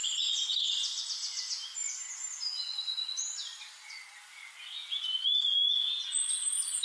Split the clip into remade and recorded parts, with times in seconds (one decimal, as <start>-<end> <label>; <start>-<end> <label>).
0.0-1.0 remade; 1.0-1.8 recorded; 1.8-4.2 remade; 4.2-6.8 recorded